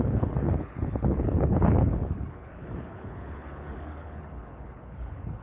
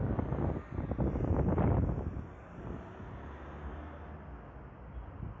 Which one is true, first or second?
second